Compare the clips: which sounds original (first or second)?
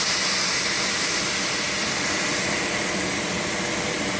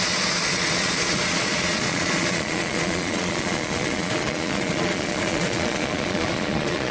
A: first